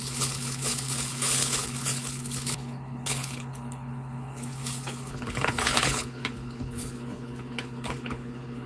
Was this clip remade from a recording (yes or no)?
yes